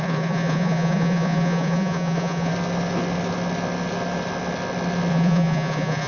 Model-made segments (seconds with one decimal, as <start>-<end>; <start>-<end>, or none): 0.0-2.5; 5.1-6.1